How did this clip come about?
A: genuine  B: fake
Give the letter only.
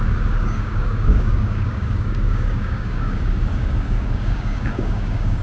B